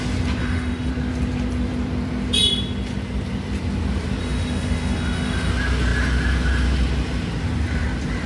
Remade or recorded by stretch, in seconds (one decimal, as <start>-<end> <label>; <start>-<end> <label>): 0.0-0.4 recorded; 0.4-0.9 remade; 0.9-4.2 recorded; 4.2-5.5 remade; 5.5-8.3 recorded